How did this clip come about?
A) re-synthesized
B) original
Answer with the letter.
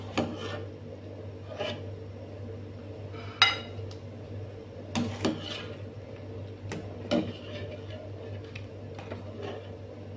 B